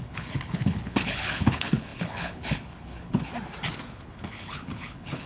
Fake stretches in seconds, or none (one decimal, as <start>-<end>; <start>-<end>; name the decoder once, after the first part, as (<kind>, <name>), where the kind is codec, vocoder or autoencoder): 0.0-3.3 (codec, HILCodec); 3.9-5.3